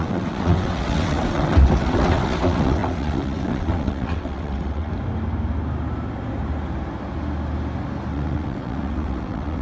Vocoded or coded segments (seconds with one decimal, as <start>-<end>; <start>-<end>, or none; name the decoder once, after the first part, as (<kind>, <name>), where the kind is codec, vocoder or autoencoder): 0.0-4.9 (vocoder, WaveNeXt); 8.1-9.6